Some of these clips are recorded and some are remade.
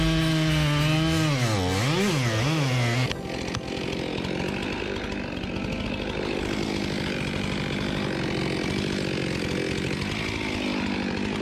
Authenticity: recorded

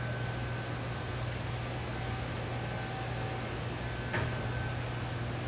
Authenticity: recorded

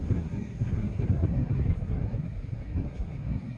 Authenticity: remade